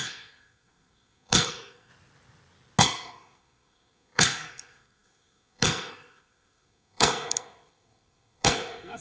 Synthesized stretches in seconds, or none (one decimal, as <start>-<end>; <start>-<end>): 0.0-1.9; 2.8-9.0